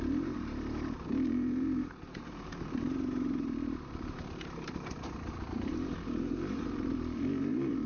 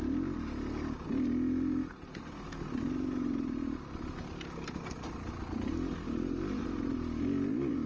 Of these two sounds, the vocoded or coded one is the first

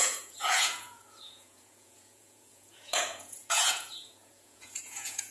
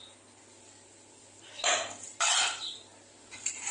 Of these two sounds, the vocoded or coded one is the first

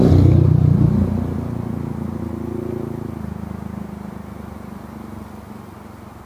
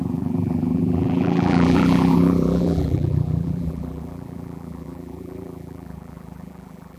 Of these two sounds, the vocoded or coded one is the second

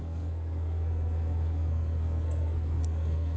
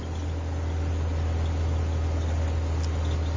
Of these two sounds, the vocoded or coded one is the first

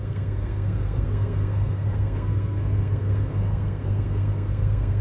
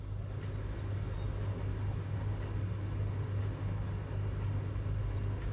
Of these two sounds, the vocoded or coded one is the first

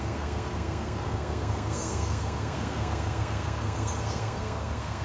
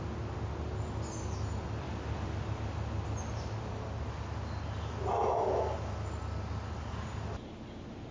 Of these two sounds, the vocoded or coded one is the first